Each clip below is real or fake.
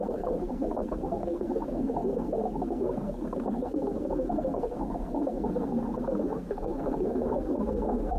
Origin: fake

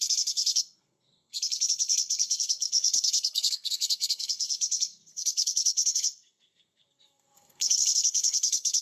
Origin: fake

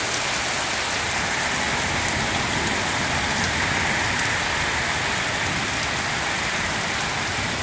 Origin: real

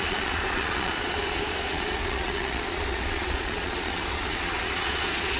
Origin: fake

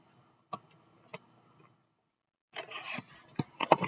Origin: real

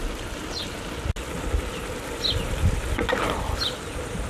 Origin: real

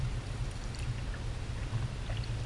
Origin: real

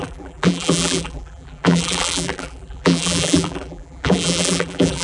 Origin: fake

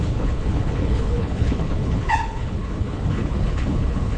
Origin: fake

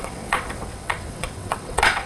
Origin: fake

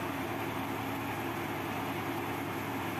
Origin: real